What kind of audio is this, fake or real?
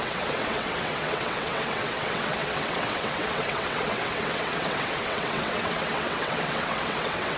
fake